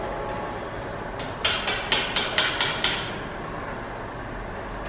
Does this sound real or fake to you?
real